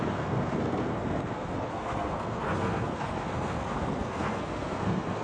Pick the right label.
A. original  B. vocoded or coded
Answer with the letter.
B